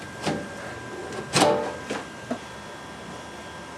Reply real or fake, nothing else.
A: real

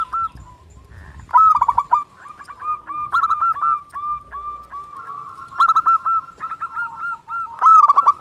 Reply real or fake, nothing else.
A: real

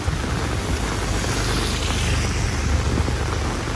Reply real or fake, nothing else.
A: real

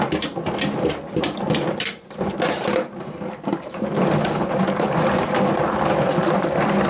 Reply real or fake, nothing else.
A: real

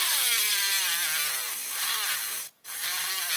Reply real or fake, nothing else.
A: real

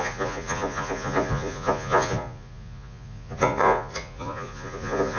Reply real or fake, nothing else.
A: fake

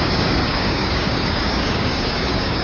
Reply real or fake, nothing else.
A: fake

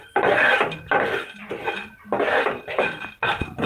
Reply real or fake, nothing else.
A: real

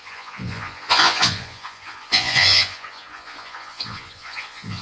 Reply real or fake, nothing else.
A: fake